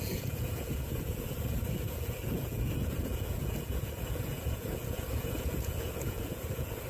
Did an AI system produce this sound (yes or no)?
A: yes